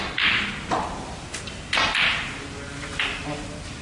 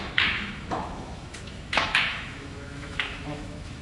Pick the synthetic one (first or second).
second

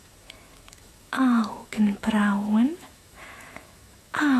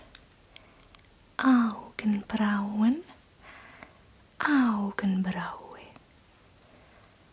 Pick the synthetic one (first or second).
first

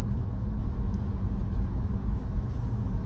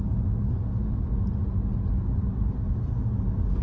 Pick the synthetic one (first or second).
first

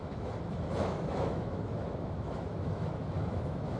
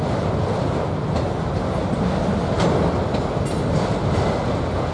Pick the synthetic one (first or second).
first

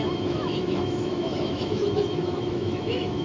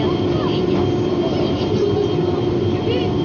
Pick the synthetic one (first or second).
first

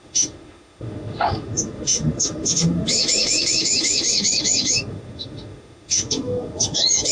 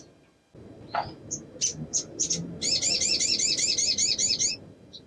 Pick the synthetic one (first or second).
first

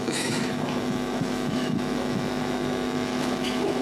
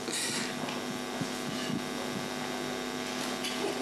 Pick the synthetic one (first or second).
first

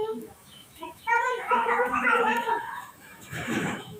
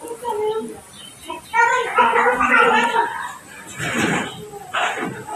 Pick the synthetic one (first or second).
first